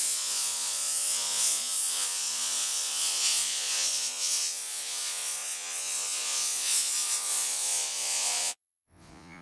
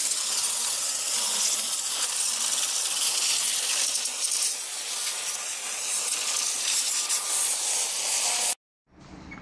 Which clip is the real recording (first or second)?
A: second